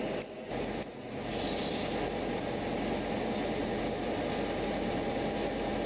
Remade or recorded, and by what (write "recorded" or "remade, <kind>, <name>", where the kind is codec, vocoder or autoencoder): recorded